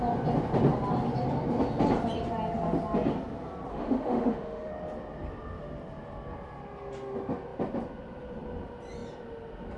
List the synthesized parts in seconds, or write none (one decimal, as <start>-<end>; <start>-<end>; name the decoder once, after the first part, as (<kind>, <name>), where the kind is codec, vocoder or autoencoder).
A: 3.7-4.7 (autoencoder, DAC-VAE)